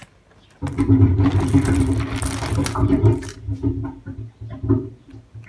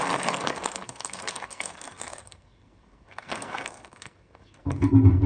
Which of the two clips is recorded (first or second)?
first